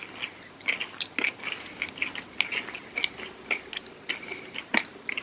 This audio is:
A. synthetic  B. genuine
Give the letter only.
B